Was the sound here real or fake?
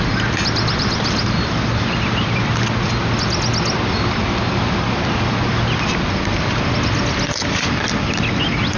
real